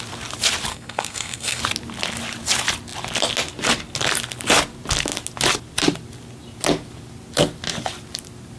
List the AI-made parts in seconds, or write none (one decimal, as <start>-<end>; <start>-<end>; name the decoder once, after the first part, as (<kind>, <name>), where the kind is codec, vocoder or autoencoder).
0.7-1.6 (codec, SNAC)